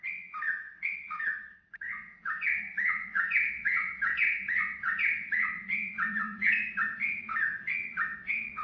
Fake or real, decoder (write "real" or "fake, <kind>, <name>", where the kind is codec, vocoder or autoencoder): fake, vocoder, WaveNeXt